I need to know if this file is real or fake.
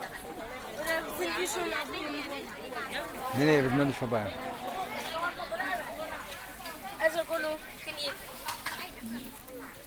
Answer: real